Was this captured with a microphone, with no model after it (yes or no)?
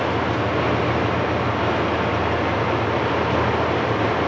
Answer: yes